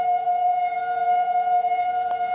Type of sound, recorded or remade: remade